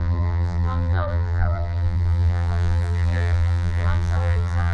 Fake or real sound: fake